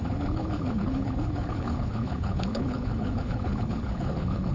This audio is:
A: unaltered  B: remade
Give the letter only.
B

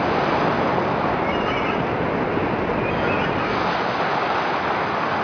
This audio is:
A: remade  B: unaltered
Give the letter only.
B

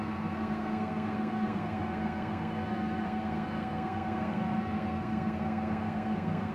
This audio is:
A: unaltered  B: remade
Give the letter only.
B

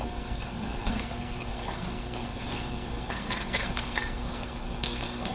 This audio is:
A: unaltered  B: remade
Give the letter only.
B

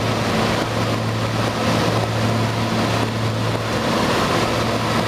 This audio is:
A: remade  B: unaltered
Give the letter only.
B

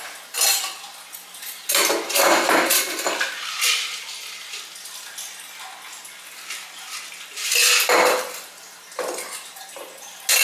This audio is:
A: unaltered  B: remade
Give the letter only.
A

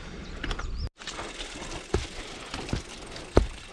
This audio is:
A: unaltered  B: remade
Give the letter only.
A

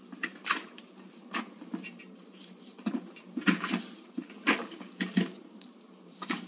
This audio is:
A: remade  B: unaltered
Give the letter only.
A